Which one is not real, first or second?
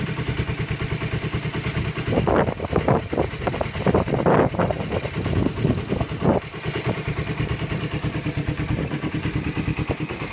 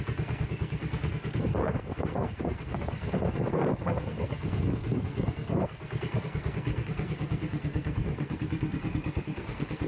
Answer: second